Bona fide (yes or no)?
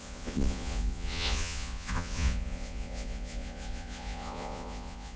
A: no